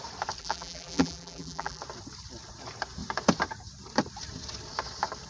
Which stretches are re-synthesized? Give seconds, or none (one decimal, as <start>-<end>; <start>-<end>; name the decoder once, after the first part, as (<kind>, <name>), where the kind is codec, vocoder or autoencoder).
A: 0.4-1.8 (vocoder, BigVGAN v2)